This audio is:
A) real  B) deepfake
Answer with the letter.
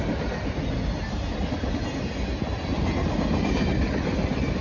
A